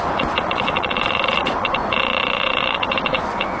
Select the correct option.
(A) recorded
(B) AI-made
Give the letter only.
B